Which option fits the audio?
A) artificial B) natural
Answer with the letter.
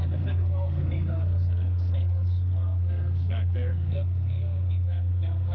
A